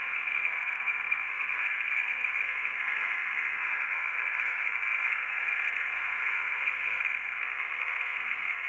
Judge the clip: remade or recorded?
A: remade